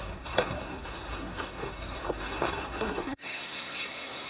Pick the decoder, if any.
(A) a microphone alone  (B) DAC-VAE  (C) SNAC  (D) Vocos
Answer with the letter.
C